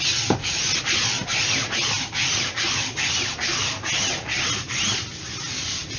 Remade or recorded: recorded